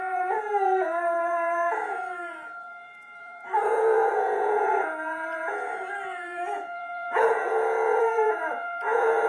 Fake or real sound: fake